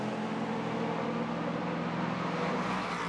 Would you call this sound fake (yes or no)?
no